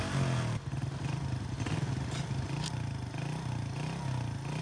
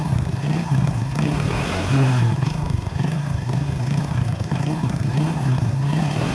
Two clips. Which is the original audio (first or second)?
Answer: first